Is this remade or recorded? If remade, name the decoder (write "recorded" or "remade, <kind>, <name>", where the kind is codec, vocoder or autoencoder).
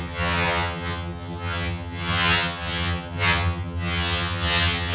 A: remade, vocoder, HiFi-GAN